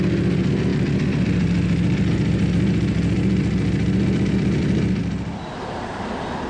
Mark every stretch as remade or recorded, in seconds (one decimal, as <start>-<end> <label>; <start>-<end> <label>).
0.0-6.5 recorded

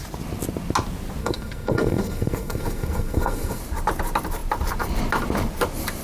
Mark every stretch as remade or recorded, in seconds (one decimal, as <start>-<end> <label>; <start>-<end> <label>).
0.0-1.2 recorded; 1.2-3.6 remade; 3.6-6.0 recorded

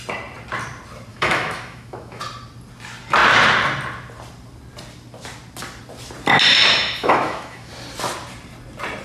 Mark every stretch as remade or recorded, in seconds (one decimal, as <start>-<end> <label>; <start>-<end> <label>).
0.0-1.1 recorded; 1.1-2.2 remade; 2.2-6.5 recorded; 6.5-7.7 remade; 7.7-9.0 recorded